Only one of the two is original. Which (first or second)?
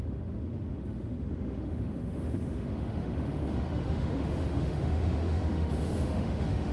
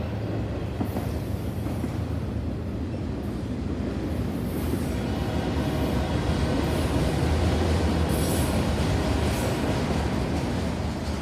second